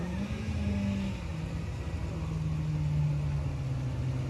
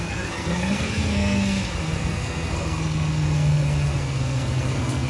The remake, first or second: second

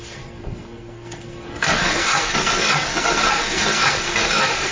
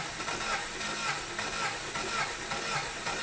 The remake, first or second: first